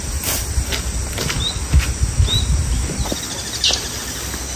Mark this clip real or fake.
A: real